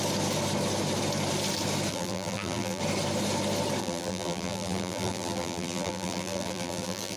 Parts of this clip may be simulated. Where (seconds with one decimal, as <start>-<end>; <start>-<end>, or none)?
1.9-2.8; 3.8-7.2